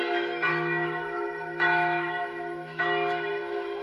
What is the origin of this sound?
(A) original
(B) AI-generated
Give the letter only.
B